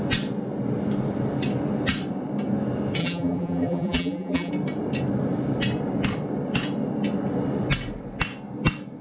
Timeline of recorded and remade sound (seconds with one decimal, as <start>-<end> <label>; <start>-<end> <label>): 0.0-3.0 recorded; 3.0-4.5 remade; 4.5-9.0 recorded